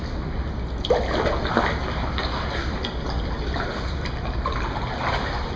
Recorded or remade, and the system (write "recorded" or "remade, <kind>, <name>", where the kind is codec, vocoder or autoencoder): recorded